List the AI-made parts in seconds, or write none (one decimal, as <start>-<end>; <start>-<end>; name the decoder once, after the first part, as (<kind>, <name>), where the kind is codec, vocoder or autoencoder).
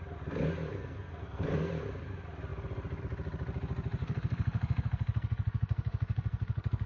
0.7-1.7 (codec, SNAC); 4.0-6.9